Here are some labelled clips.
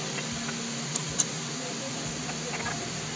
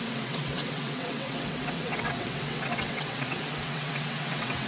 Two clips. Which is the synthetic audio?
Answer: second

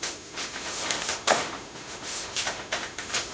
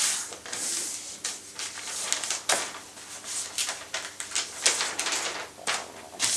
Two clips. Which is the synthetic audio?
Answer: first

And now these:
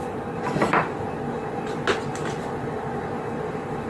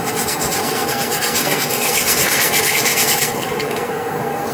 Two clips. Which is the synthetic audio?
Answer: second